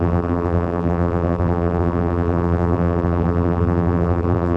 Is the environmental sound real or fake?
fake